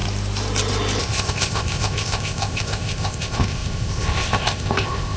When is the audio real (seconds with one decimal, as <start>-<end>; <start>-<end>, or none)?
0.0-1.0